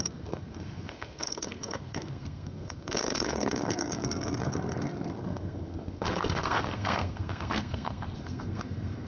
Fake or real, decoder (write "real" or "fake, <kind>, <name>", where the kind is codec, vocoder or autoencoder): fake, codec, SNAC